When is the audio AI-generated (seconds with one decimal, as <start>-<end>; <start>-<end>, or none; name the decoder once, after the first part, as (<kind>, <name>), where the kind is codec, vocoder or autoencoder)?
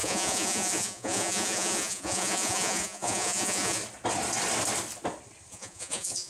0.0-3.8 (vocoder, Vocos); 5.5-6.3